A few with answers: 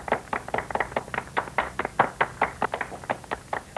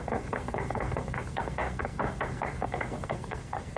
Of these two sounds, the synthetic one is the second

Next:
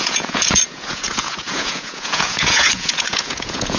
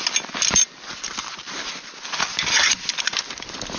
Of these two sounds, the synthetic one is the first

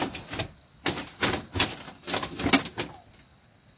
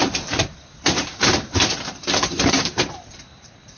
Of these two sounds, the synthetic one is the second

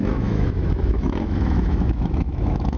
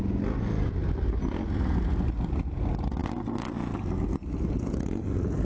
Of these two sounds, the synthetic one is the first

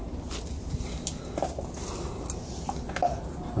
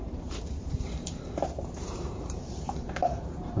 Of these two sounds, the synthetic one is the second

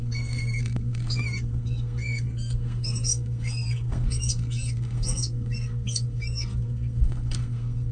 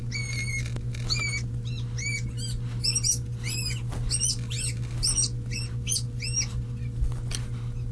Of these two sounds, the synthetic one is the first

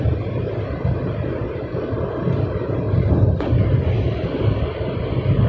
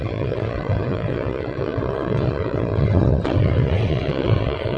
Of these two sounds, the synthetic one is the second